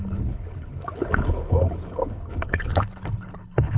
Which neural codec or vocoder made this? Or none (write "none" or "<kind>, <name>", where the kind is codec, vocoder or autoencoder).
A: codec, HILCodec